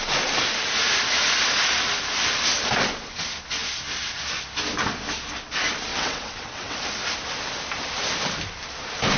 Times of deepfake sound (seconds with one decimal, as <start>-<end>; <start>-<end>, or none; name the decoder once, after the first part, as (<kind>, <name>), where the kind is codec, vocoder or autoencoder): 5.9-6.8 (vocoder, WaveNeXt)